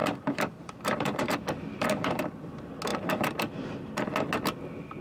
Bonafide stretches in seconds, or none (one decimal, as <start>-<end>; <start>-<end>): 2.2-2.9; 4.0-5.0